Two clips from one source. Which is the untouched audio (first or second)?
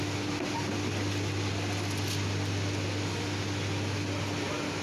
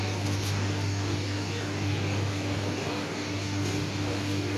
first